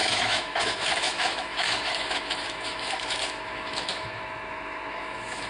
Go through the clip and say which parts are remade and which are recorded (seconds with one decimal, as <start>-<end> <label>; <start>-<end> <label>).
0.0-5.5 remade